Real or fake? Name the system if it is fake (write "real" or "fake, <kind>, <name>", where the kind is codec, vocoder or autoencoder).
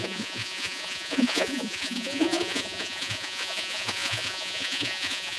fake, vocoder, Vocos